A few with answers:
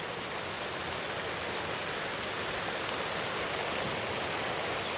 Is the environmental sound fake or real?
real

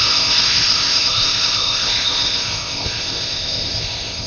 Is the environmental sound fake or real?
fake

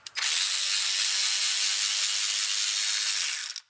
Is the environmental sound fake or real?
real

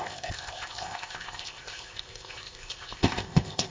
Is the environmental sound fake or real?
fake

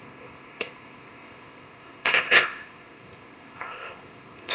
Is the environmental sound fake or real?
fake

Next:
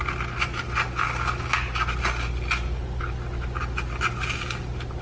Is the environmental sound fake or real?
real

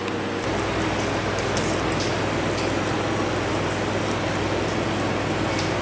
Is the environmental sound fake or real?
real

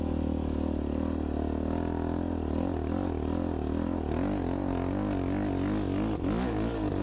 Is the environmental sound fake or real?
real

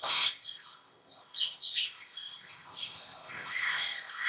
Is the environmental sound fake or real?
fake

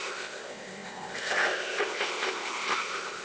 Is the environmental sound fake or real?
fake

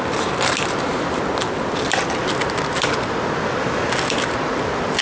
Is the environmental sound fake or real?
real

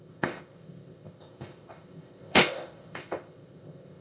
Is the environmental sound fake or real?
fake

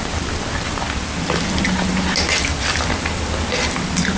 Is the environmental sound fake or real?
real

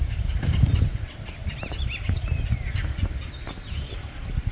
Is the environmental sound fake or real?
real